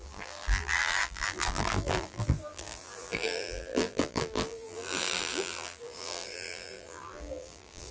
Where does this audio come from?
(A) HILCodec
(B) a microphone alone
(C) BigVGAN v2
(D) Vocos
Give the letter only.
C